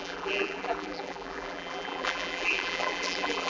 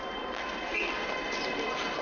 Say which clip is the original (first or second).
second